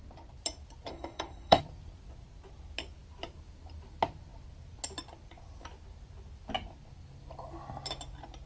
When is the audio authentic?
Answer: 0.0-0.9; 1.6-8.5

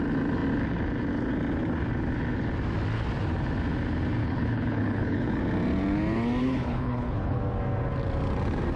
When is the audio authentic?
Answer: 0.0-4.2; 5.4-6.4; 7.4-8.8

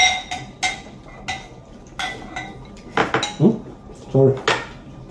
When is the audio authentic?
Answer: 0.0-5.1

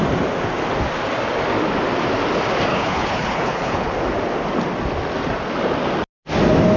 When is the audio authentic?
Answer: 0.0-2.7; 3.9-6.8

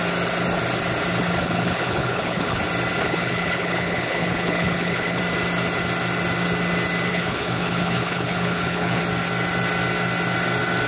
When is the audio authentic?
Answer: 0.0-1.4; 2.6-3.0; 5.2-7.1; 9.0-10.9

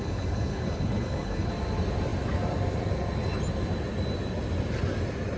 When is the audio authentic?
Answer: 1.5-5.4